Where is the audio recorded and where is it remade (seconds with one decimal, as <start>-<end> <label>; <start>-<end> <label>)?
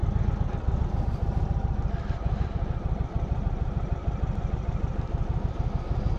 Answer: 0.0-6.2 recorded